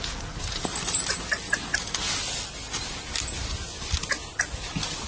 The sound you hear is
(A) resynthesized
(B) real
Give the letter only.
B